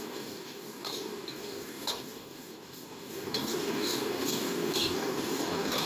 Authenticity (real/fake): fake